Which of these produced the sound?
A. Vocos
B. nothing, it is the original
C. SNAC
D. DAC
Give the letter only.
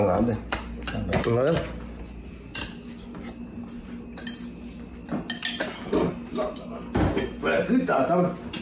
B